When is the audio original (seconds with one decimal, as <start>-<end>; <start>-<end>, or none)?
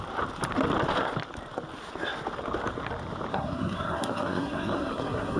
0.0-3.3